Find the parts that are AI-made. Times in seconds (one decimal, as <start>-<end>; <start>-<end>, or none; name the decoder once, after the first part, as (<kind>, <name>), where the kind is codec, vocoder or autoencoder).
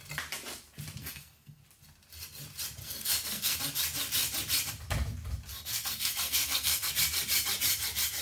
1.0-1.6 (codec, SNAC); 2.8-3.6; 5.5-6.9